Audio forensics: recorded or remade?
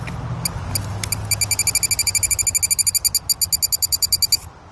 recorded